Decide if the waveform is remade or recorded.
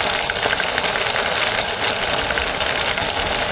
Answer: recorded